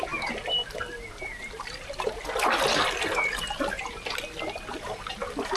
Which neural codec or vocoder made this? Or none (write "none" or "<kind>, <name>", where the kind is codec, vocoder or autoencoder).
none